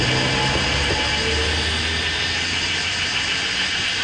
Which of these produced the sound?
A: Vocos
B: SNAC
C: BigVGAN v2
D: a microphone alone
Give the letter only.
D